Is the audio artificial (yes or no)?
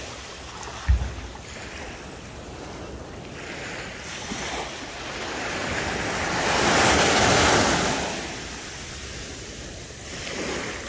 no